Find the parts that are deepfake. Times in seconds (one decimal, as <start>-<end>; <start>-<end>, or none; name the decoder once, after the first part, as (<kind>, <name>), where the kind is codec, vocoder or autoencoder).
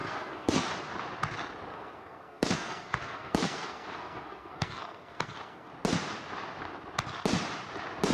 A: 0.0-0.7 (codec, SNAC); 1.7-5.7